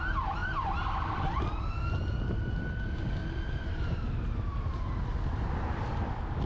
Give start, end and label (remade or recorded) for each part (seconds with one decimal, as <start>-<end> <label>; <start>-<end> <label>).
0.0-6.5 recorded